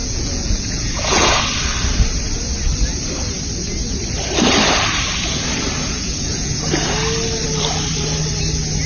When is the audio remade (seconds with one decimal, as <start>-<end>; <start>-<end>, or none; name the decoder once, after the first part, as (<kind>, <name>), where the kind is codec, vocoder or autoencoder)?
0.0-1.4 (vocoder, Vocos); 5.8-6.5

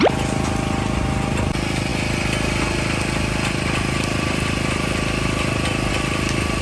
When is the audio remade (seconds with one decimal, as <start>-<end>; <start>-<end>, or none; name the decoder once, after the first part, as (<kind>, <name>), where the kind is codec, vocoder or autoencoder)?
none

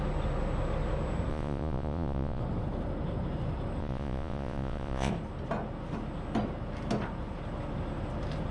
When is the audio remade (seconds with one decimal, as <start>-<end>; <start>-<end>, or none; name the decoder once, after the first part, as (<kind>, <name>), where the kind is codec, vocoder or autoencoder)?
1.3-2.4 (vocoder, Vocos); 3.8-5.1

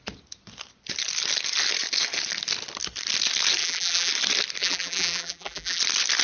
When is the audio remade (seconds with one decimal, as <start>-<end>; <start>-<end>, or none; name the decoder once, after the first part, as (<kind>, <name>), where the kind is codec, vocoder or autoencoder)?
3.6-4.1 (vocoder, BigVGAN v2); 4.6-5.8

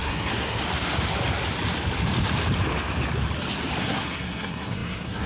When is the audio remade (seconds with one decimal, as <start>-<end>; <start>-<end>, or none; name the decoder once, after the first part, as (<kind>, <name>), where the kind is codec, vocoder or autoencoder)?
0.0-0.6 (codec, SNAC); 3.8-5.3

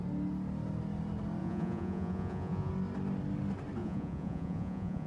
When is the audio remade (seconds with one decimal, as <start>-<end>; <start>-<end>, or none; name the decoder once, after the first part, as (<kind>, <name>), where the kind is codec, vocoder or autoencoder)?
1.4-2.7 (vocoder, Vocos); 3.8-5.1

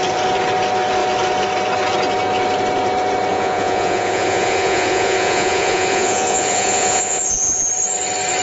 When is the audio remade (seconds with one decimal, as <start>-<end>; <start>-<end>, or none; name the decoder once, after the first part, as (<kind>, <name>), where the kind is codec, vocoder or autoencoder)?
3.3-7.7 (vocoder, Vocos)